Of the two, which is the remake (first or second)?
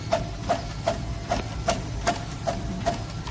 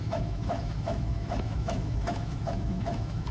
second